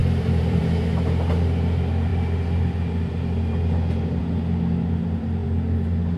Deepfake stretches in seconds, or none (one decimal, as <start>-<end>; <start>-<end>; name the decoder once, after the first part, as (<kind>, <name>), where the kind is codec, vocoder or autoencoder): 0.0-0.6 (vocoder, BigVGAN v2)